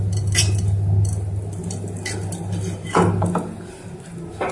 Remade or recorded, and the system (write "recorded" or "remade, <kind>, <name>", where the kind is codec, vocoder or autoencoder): recorded